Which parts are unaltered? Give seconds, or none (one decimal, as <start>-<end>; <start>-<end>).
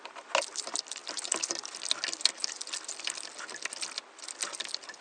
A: 0.0-1.0; 2.7-5.0